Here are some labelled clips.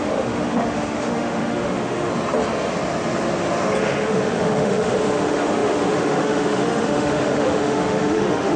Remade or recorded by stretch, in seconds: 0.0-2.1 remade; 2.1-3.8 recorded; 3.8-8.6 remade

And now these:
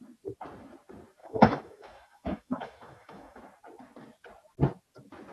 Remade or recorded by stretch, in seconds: 0.0-1.2 recorded; 1.2-3.4 remade; 3.4-5.3 recorded

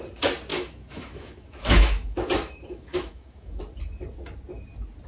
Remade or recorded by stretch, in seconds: 0.0-0.5 recorded; 0.5-3.6 remade; 3.6-5.1 recorded

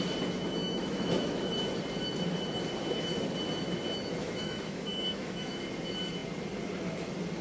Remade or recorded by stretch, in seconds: 0.0-0.6 recorded; 0.6-1.4 remade; 1.4-4.2 recorded; 4.2-5.6 remade; 5.6-7.4 recorded